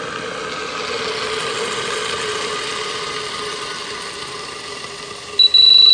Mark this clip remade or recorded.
recorded